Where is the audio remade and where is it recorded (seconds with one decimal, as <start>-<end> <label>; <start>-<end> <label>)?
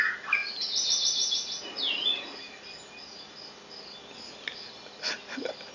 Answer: 0.0-5.7 recorded